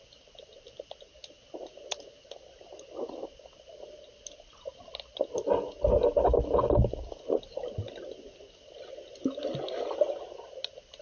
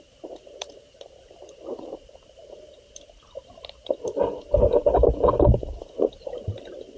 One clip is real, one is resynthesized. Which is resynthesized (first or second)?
second